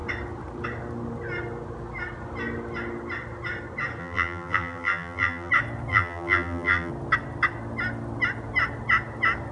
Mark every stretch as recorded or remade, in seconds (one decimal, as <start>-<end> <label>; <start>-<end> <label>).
0.0-4.0 recorded; 4.0-5.5 remade; 5.5-5.9 recorded; 5.9-6.9 remade; 6.9-9.5 recorded